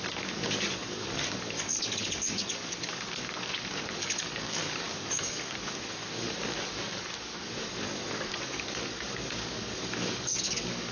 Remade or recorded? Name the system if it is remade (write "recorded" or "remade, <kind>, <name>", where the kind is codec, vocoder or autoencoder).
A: remade, codec, DAC